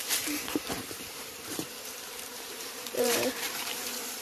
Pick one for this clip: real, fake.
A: fake